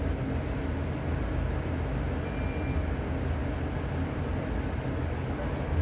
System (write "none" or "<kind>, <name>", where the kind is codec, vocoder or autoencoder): none